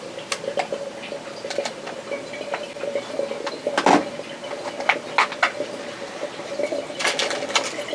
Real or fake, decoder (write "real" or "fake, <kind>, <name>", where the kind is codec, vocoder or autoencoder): real